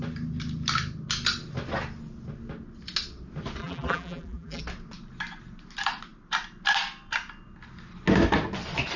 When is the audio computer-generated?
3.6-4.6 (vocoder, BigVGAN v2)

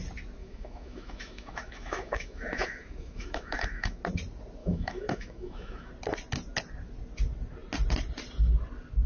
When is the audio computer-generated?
0.4-4.0 (autoencoder, DAC-VAE); 4.6-5.9

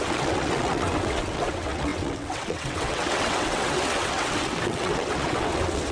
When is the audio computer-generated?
0.0-5.9 (vocoder, WaveNeXt)

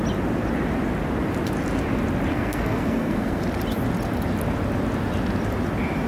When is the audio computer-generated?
2.3-3.4 (codec, SNAC)

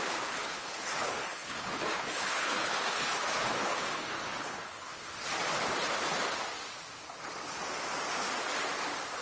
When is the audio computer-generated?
0.0-5.1 (codec, HILCodec)

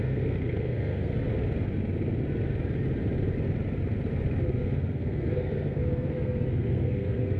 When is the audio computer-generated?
0.0-1.1 (codec, SNAC); 4.4-7.4